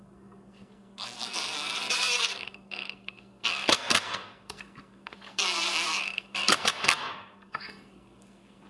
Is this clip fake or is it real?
fake